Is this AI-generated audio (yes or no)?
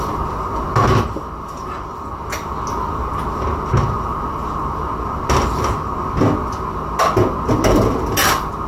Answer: no